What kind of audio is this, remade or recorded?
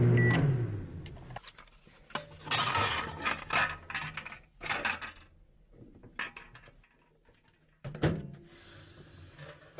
recorded